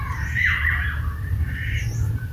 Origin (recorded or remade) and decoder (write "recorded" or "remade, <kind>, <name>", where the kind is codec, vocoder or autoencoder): remade, vocoder, BigVGAN v2